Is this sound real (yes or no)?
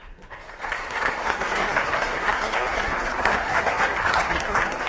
no